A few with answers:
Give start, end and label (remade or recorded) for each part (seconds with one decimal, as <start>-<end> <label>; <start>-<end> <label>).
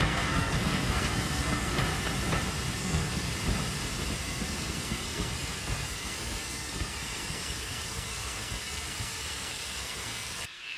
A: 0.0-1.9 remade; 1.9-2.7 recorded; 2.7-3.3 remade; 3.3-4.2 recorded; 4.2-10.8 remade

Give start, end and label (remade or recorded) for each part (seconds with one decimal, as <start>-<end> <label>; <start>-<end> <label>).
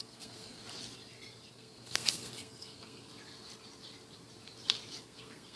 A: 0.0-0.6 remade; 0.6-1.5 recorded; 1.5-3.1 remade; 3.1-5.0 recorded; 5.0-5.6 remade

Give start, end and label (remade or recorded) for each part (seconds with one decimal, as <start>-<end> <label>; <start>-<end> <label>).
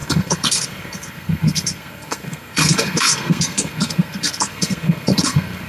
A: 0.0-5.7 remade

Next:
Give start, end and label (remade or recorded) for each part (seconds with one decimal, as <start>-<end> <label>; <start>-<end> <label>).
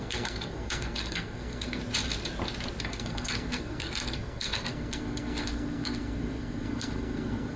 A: 0.0-1.8 remade; 1.8-2.8 recorded; 2.8-7.6 remade